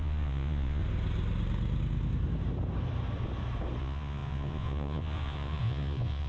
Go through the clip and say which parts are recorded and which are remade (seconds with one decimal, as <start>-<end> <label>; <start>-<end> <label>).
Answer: 0.0-0.8 remade; 0.8-3.8 recorded; 3.8-6.3 remade